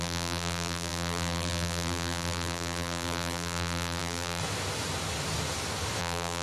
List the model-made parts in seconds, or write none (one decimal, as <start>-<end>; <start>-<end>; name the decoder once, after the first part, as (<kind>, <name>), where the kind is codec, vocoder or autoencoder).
0.0-4.4 (vocoder, BigVGAN v2); 6.0-6.4